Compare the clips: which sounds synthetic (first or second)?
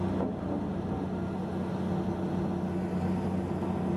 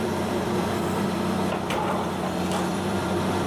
second